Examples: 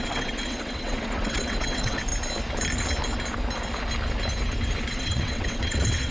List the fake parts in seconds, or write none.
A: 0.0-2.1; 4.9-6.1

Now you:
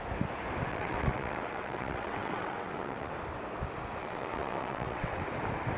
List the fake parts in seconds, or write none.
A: 0.7-3.1; 4.0-5.2

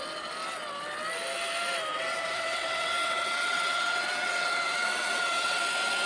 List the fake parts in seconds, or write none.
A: 1.9-5.6

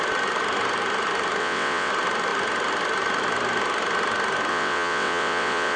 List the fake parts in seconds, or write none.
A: 1.4-1.9; 4.5-5.8

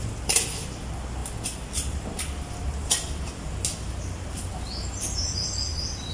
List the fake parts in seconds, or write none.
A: none

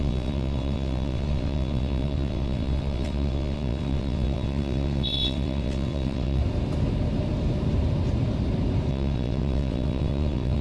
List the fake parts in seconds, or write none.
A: 0.0-6.4; 8.9-10.6